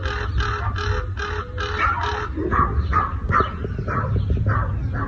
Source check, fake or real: real